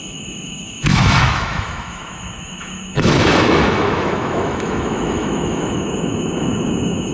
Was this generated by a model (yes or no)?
yes